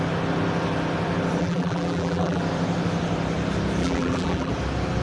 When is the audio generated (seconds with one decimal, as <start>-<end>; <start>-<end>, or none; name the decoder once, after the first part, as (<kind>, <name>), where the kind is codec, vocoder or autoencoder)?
1.4-2.4 (vocoder, BigVGAN v2); 3.8-4.5